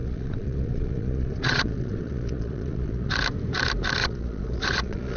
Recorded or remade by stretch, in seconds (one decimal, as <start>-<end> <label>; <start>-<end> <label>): 0.0-3.1 remade; 3.1-4.0 recorded; 4.0-5.2 remade